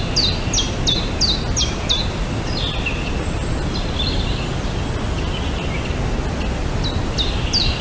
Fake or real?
real